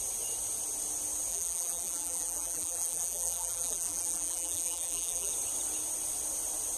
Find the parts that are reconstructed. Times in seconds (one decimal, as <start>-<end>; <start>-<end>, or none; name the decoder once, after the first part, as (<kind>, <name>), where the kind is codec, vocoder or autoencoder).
1.3-5.3 (vocoder, BigVGAN v2)